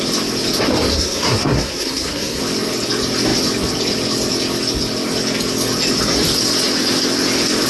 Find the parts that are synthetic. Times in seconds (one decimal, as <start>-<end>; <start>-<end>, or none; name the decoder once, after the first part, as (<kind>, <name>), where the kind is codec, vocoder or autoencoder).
0.9-2.4 (codec, SNAC)